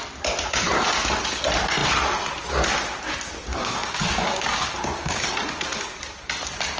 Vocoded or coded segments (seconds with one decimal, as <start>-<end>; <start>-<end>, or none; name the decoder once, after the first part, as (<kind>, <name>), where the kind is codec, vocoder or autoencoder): 3.5-5.2 (codec, DAC)